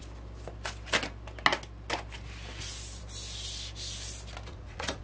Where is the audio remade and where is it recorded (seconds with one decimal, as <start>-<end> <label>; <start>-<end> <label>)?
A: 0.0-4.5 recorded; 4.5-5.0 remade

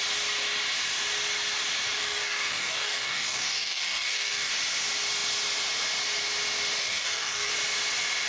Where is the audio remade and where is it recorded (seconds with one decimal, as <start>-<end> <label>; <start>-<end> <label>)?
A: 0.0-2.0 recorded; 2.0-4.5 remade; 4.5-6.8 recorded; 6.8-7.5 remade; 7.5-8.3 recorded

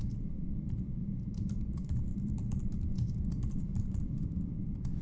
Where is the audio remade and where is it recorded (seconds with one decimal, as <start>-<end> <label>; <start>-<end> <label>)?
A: 0.0-1.0 recorded; 1.0-1.6 remade; 1.6-2.1 recorded; 2.1-4.4 remade; 4.4-5.0 recorded

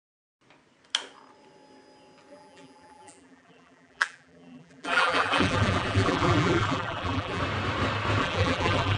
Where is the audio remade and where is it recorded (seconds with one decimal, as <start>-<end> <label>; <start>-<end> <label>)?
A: 0.0-2.3 recorded; 2.3-7.4 remade; 7.4-8.2 recorded; 8.2-9.0 remade

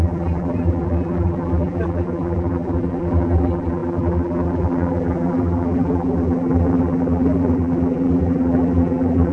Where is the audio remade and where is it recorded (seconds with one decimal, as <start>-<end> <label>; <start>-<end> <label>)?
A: 0.0-9.3 remade

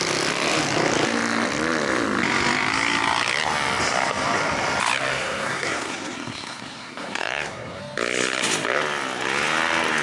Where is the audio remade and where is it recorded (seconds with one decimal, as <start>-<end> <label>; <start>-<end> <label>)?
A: 0.0-5.1 recorded; 5.1-7.8 remade; 7.8-10.0 recorded